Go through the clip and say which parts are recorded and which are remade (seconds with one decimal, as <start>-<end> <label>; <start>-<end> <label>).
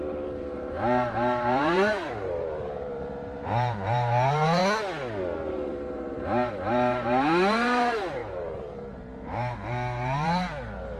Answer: 0.0-4.6 remade; 4.6-5.5 recorded; 5.5-11.0 remade